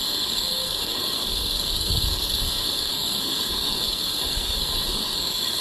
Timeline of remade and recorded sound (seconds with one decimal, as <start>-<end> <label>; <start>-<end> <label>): 0.0-5.6 remade